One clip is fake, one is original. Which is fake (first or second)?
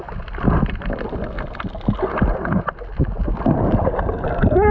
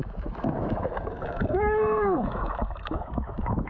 second